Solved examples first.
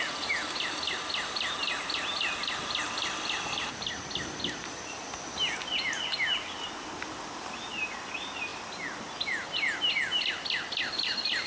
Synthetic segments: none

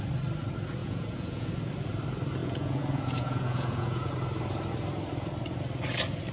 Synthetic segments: 0.8-1.5 (vocoder, Vocos); 2.4-4.1